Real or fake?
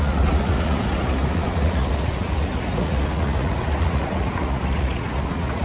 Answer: fake